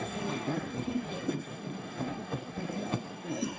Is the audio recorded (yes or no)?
no